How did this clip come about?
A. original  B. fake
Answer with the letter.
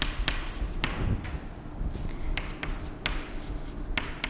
A